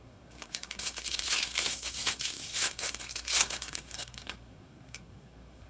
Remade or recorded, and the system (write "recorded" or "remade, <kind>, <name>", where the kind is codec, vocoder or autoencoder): remade, codec, SNAC